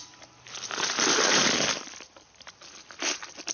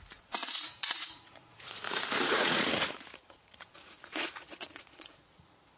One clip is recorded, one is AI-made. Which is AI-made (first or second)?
second